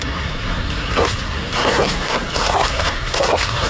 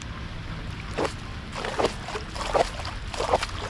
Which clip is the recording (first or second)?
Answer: second